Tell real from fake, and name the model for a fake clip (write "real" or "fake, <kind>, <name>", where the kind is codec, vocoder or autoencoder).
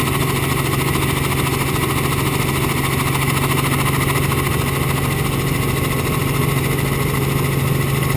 real